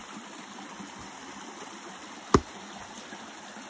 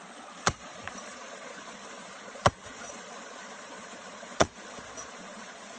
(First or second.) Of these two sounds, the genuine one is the first